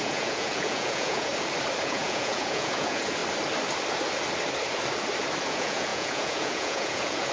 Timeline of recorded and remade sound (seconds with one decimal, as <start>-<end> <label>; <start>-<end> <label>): 0.0-1.3 remade; 1.3-1.8 recorded; 1.8-3.2 remade; 3.2-5.5 recorded; 5.5-7.3 remade